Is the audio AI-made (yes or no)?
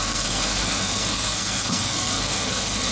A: yes